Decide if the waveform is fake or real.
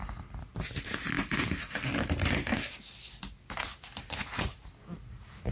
real